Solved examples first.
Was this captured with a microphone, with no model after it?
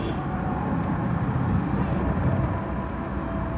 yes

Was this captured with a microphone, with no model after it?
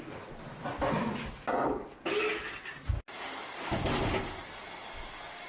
yes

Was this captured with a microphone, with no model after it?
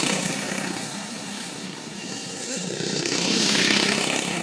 no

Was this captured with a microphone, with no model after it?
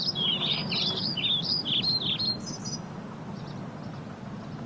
yes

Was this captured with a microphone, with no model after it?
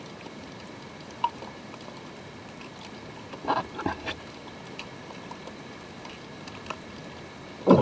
yes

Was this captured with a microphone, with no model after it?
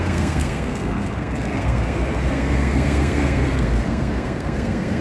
no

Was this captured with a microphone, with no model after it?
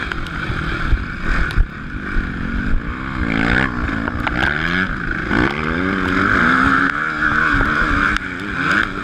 yes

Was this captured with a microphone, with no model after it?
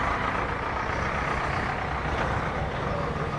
yes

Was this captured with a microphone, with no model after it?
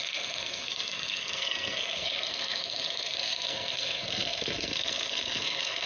no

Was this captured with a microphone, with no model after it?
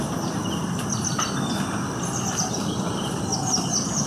yes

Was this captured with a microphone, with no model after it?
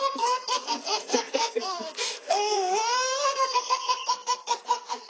no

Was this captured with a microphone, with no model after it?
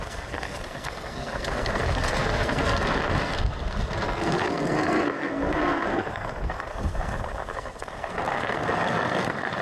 no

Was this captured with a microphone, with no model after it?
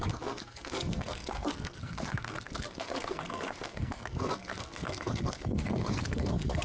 no